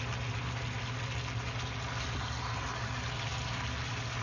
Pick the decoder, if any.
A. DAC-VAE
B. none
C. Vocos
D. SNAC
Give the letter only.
B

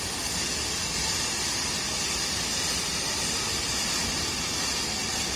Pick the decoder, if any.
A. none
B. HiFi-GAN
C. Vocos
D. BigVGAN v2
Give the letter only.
A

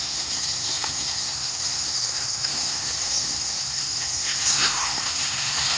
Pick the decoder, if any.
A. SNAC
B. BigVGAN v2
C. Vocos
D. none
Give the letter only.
A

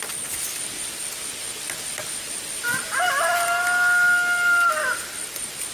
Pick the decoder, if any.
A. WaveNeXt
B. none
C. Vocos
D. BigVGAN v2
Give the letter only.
B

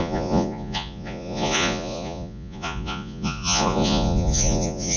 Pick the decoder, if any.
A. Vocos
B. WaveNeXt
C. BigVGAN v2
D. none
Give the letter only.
A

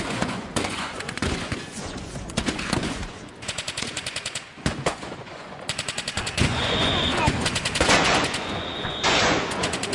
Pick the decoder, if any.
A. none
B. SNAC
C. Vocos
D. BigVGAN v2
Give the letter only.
C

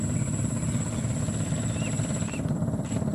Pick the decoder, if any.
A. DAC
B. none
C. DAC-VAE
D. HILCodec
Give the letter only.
B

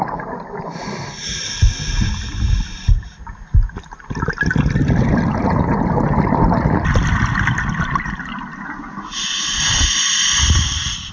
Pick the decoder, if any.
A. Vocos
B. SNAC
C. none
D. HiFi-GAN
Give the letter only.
C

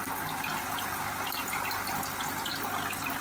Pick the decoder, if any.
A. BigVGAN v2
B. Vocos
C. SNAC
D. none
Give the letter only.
D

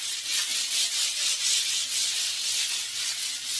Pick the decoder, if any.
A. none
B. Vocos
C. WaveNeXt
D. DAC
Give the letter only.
C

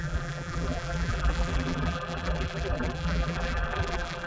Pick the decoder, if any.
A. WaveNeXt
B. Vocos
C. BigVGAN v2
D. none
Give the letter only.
C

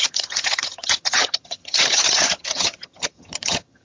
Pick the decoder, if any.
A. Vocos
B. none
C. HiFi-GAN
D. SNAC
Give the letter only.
C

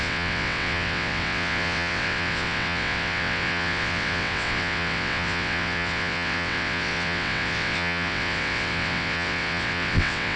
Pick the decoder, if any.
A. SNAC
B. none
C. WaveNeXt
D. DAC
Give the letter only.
C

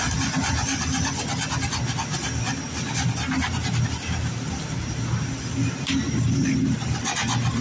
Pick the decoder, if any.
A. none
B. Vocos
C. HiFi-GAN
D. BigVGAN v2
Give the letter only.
D